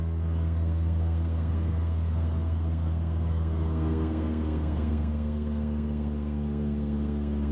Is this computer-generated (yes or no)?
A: yes